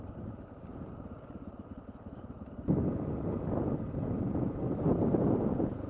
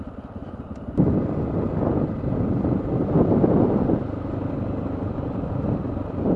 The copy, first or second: second